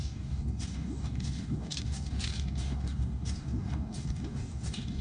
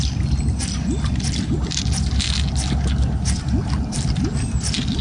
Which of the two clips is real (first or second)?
second